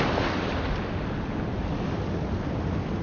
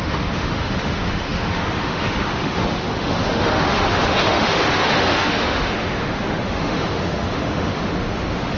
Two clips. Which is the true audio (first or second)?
first